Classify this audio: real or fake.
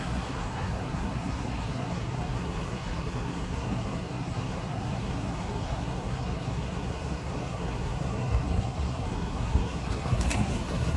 fake